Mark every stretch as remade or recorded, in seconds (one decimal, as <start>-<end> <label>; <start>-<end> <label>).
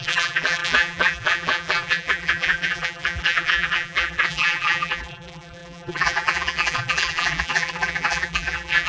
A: 0.0-8.9 remade